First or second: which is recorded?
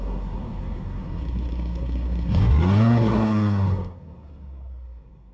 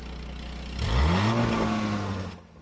second